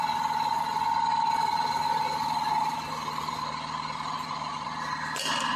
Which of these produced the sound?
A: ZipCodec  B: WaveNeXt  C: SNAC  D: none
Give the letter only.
D